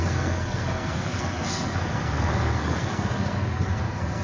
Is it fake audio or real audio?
fake